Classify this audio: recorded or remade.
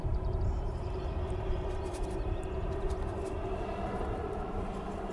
remade